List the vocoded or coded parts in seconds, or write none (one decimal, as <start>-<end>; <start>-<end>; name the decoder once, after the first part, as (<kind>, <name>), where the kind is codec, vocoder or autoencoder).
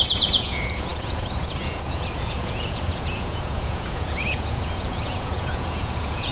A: 0.0-6.3 (vocoder, Vocos)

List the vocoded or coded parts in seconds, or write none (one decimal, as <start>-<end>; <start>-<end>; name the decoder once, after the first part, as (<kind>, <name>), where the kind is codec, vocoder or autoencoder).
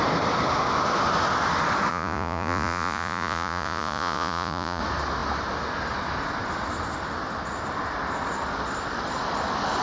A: 1.9-4.8 (vocoder, Vocos)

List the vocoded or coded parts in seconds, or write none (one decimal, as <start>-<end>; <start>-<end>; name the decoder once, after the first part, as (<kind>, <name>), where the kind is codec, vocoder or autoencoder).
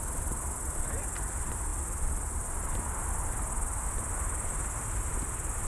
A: none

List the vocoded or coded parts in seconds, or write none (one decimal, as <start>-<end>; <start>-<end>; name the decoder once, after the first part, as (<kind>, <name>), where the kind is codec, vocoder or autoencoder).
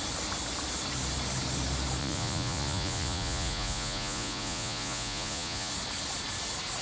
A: 2.0-5.7 (vocoder, Vocos)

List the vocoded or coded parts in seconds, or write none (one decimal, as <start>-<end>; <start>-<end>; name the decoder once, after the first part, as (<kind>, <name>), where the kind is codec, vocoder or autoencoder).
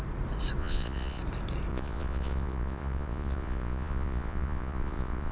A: 0.6-1.2 (vocoder, Vocos); 1.7-5.3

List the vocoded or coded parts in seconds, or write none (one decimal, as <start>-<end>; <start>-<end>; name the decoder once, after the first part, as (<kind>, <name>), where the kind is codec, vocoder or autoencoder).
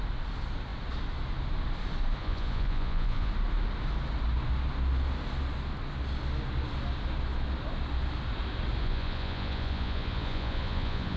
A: 2.2-3.3 (vocoder, Vocos); 8.8-11.2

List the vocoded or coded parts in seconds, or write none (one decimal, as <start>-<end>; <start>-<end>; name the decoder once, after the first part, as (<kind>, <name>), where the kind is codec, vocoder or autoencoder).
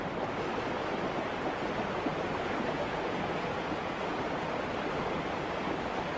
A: 2.1-4.2 (vocoder, Vocos)